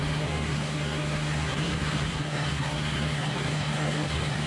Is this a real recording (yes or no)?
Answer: no